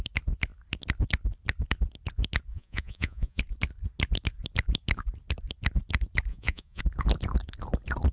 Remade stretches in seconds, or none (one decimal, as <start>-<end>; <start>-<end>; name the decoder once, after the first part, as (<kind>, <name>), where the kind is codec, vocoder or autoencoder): 2.5-3.4 (vocoder, Vocos); 6.3-6.8